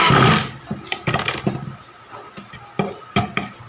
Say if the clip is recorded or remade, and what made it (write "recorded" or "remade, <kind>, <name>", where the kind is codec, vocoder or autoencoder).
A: recorded